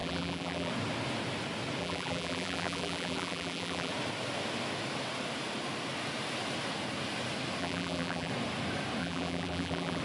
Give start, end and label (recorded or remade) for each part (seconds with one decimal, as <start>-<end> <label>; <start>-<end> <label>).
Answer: 0.0-0.7 remade; 0.7-1.8 recorded; 1.8-3.9 remade; 3.9-7.6 recorded; 7.6-8.3 remade; 8.3-9.0 recorded; 9.0-10.0 remade